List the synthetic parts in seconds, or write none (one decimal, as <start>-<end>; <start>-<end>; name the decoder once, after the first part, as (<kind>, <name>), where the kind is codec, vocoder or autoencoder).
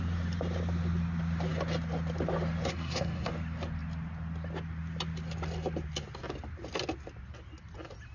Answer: 2.7-3.3 (codec, SNAC)